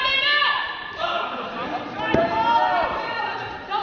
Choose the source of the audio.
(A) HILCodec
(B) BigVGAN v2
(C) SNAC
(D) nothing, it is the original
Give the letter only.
B